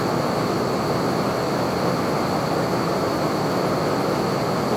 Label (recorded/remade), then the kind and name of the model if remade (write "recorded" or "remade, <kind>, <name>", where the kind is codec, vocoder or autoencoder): recorded